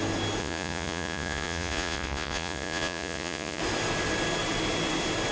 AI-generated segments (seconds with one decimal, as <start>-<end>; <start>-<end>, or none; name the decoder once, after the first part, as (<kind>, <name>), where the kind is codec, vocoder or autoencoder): 0.4-3.6 (vocoder, Vocos)